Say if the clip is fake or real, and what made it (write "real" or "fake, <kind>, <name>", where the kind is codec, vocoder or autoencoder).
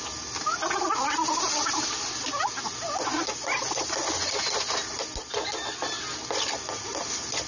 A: real